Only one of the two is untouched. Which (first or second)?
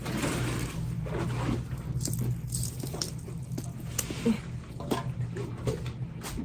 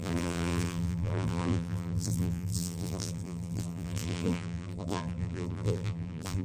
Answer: first